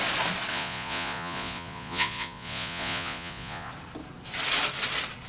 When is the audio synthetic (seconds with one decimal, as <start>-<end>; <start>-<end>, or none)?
0.5-3.7